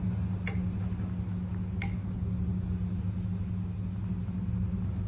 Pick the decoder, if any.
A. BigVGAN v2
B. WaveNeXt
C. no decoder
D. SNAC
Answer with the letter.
C